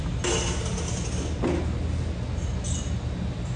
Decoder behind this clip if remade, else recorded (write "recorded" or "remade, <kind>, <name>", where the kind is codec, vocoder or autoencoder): recorded